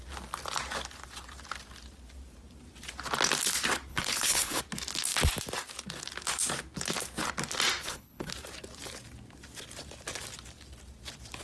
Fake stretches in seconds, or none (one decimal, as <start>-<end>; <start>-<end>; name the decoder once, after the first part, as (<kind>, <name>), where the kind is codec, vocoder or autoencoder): 3.9-4.6 (codec, HILCodec); 7.8-8.3